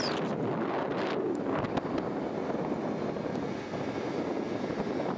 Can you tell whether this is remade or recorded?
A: recorded